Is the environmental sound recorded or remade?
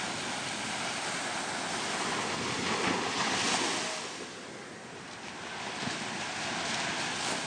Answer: recorded